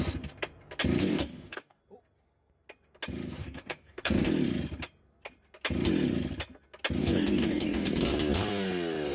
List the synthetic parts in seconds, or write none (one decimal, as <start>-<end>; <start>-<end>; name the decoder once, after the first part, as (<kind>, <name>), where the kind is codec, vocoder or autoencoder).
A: 1.0-1.8 (codec, DAC); 3.4-4.3; 7.0-7.9